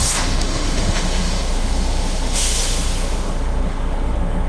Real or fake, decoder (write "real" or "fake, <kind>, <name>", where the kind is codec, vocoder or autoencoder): fake, autoencoder, DAC-VAE